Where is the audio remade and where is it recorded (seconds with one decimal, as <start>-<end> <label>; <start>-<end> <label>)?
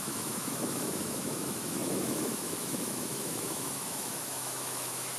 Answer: 0.0-5.2 remade